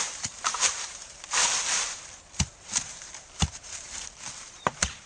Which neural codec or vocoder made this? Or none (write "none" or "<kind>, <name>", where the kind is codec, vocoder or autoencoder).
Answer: vocoder, BigVGAN v2